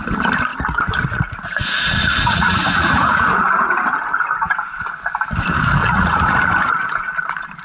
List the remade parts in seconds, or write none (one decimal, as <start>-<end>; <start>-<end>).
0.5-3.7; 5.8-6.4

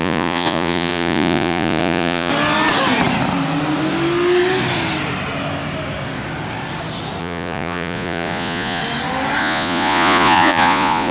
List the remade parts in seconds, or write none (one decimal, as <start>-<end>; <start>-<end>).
0.0-2.3; 7.2-8.8; 9.4-11.1

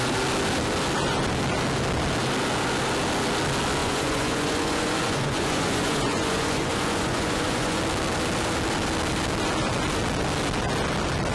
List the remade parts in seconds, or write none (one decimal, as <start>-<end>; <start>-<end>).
3.8-7.8

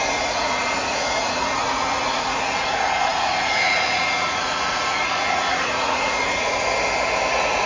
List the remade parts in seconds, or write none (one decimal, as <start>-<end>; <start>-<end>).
0.0-6.6; 7.3-7.7

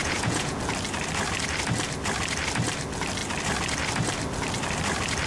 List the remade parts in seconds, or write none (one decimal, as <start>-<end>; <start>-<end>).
0.0-0.6

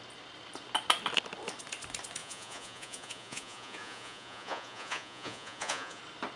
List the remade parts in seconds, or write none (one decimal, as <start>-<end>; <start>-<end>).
2.2-6.0